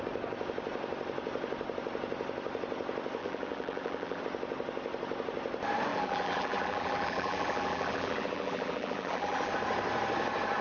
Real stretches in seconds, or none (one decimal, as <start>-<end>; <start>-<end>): 0.0-3.2; 4.2-5.9; 9.5-10.6